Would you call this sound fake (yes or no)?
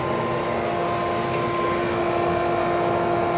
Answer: no